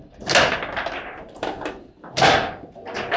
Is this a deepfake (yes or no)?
no